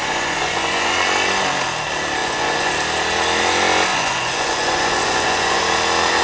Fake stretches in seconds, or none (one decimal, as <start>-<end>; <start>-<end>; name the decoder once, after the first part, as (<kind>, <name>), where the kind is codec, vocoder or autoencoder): 0.0-0.9 (vocoder, Vocos); 2.2-2.7; 3.9-5.6